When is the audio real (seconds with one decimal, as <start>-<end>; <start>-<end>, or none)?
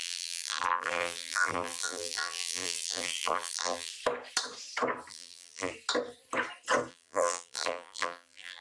3.9-5.1; 5.7-6.9